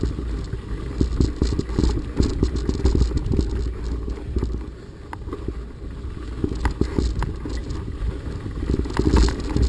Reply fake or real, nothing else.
real